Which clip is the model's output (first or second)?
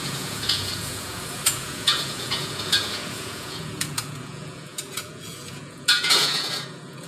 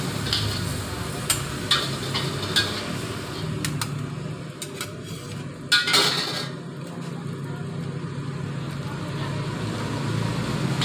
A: first